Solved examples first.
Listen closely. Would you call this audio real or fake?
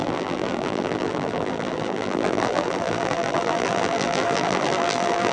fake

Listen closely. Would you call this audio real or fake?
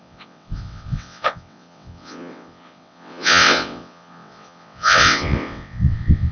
fake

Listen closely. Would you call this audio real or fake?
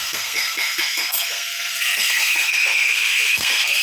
fake